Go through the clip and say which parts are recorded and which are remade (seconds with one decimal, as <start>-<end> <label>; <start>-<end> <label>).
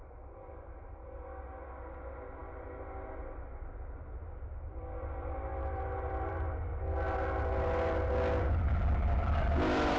0.0-2.4 remade; 2.4-3.5 recorded; 3.5-5.5 remade; 5.5-6.1 recorded; 6.1-6.7 remade; 6.7-8.4 recorded; 8.4-10.0 remade